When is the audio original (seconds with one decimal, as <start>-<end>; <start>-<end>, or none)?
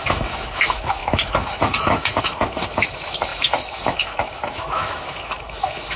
none